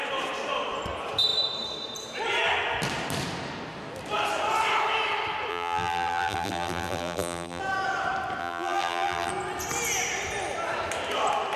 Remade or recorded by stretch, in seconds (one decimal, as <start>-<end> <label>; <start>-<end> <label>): 0.0-5.5 recorded; 5.5-7.6 remade; 7.6-8.4 recorded; 8.4-9.3 remade; 9.3-11.6 recorded